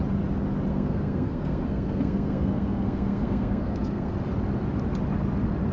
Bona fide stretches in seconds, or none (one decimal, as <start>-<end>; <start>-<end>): 0.0-0.7; 4.1-5.7